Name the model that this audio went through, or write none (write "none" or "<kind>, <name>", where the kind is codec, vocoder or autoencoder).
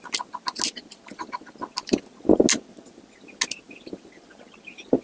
none